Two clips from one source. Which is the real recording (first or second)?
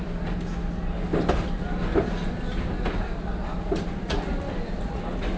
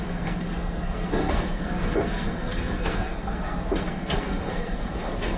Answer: first